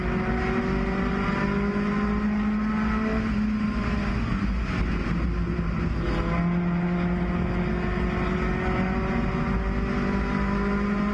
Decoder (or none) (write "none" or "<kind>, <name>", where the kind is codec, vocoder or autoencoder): none